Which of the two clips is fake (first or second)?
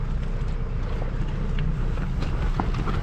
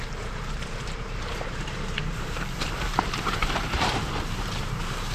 second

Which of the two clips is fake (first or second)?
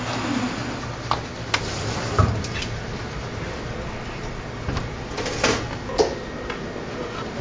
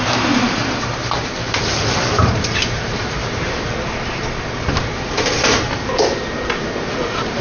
second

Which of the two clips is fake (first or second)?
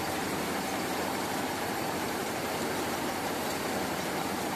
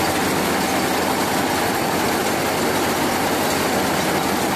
first